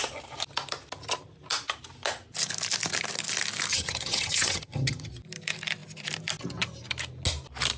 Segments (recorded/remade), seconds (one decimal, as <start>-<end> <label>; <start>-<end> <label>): 0.0-3.7 recorded; 3.7-5.1 remade; 5.1-7.8 recorded